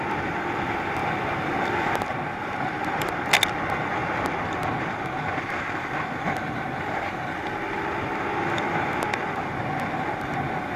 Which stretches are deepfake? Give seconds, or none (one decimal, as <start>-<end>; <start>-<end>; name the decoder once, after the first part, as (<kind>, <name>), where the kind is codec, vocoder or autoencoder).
1.0-3.1 (vocoder, BigVGAN v2); 9.4-9.9